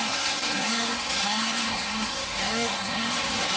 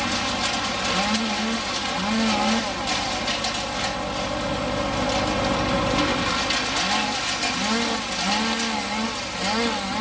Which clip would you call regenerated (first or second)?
first